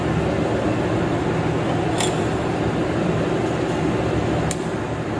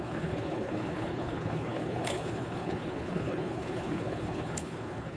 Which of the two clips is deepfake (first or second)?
second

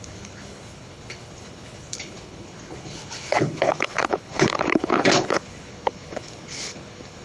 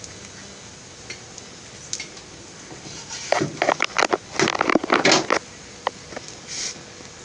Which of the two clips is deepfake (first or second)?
first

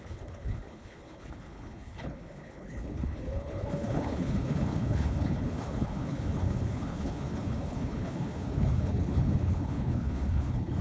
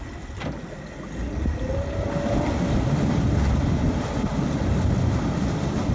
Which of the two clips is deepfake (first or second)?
first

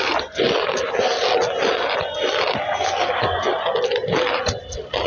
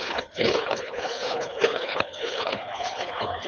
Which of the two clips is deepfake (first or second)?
second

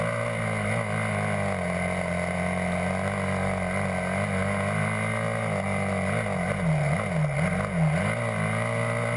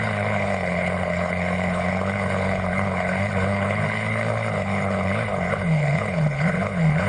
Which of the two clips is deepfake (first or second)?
second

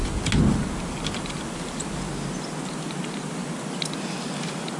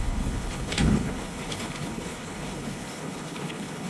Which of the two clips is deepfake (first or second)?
second